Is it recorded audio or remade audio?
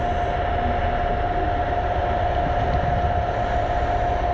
recorded